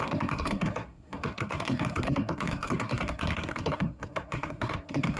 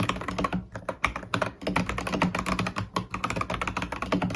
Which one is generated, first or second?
first